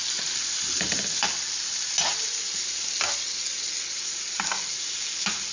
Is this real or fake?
real